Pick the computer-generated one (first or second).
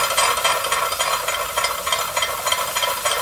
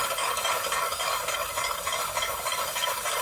second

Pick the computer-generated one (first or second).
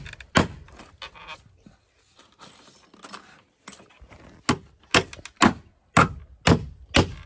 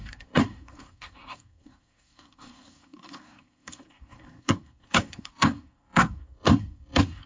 second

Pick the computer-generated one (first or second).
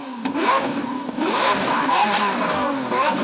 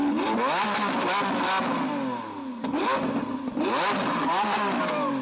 first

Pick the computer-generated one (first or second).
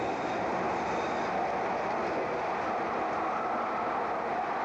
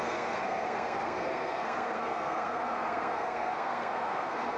second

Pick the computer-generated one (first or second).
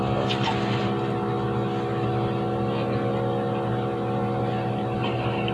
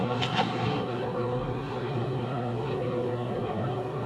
second